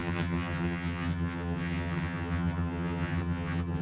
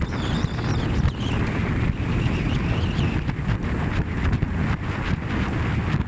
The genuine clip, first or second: second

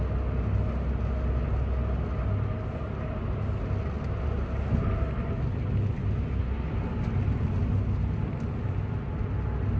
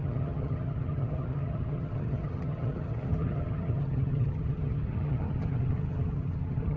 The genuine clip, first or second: first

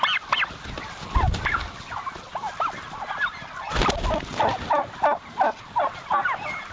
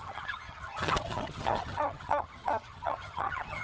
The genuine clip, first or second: first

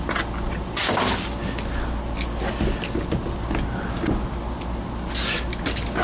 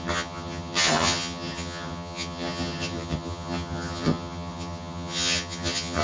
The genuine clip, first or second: first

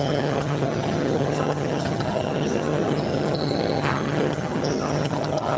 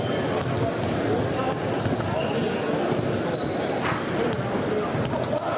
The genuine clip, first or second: second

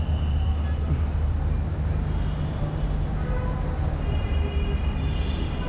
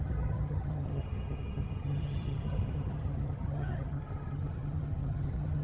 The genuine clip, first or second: first